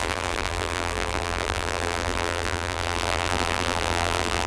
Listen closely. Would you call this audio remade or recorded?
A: remade